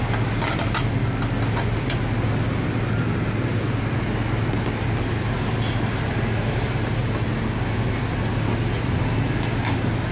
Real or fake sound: real